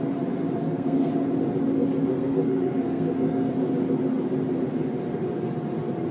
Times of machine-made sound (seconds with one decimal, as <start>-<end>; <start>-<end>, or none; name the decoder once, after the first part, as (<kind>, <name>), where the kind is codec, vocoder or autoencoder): 0.6-1.1 (codec, SNAC); 2.1-3.5